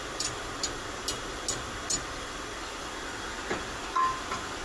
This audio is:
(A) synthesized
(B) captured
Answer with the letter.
B